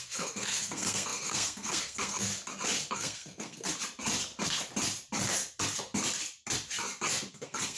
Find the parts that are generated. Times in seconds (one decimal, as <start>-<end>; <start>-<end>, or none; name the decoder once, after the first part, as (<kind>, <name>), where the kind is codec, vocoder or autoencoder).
0.0-2.3 (codec, SNAC); 2.9-3.7; 7.3-7.8